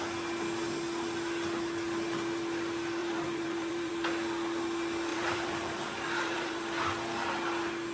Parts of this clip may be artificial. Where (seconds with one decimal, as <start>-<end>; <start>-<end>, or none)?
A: 3.0-3.9; 5.1-6.6